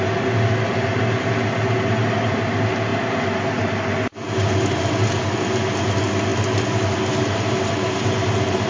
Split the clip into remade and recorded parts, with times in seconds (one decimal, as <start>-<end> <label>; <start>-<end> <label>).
0.0-8.7 recorded